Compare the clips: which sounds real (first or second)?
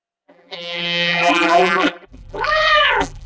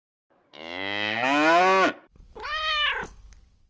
second